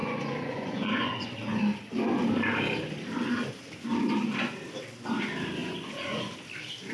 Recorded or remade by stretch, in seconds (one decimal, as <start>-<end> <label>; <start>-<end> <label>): 0.0-1.6 remade; 1.6-5.6 recorded; 5.6-6.3 remade; 6.3-6.9 recorded